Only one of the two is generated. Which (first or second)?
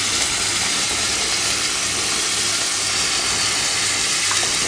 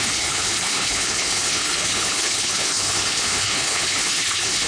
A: second